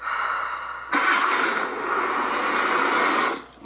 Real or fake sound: real